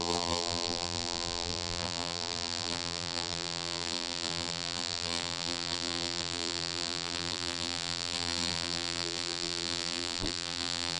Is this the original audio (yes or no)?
no